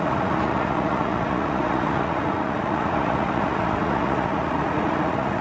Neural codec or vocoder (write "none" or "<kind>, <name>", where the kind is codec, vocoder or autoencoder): vocoder, Vocos